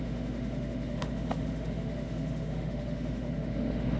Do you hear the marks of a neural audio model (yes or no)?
yes